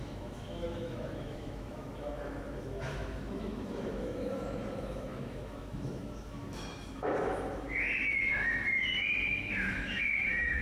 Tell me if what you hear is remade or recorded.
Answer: remade